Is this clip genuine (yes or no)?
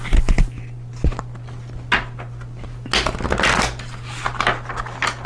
yes